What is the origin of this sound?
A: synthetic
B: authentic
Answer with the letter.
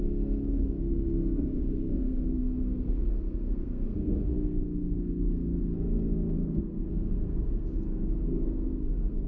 A